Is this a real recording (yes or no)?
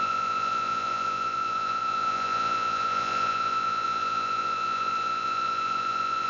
no